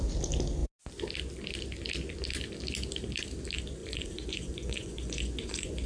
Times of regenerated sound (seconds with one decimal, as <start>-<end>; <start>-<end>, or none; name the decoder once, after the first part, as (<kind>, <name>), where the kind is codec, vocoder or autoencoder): 3.8-5.9 (vocoder, Vocos)